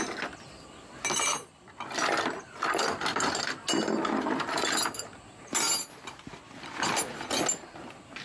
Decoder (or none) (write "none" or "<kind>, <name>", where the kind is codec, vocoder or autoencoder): none